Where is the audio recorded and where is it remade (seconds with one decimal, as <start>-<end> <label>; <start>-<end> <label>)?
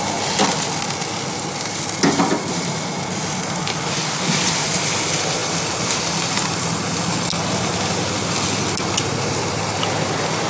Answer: 0.0-10.5 recorded